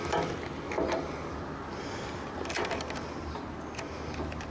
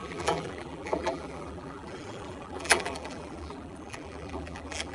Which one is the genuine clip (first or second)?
first